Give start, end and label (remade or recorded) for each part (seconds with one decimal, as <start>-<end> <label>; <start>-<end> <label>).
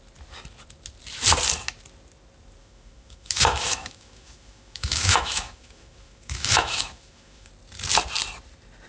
0.0-2.6 recorded; 2.6-7.5 remade; 7.5-8.9 recorded